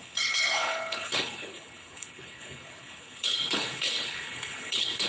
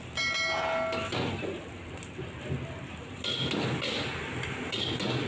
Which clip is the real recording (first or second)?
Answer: second